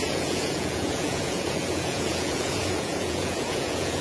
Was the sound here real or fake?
fake